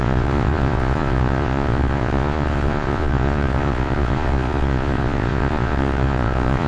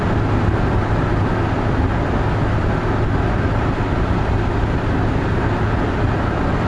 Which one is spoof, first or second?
first